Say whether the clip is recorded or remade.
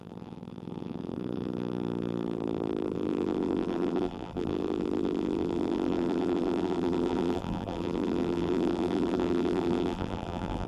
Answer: remade